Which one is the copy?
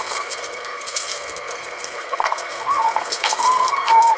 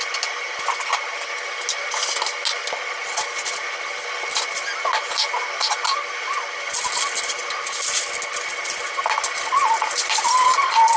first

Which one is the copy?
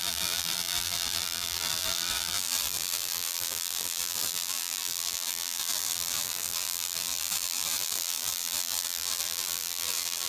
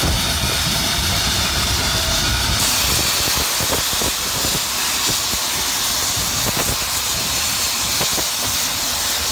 first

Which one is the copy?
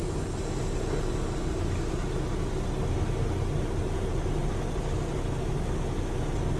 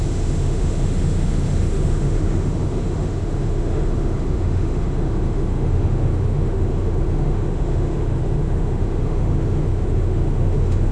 second